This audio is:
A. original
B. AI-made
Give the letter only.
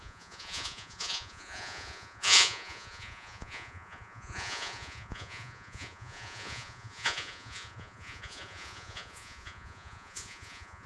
B